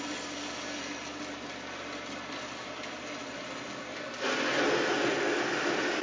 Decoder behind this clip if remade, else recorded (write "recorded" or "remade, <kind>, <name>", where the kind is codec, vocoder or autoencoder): recorded